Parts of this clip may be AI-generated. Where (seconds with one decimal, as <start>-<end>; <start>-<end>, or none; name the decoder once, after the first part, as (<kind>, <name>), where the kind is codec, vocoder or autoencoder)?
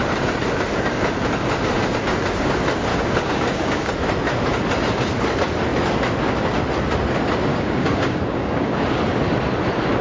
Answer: 2.9-3.9 (codec, DAC); 7.5-9.0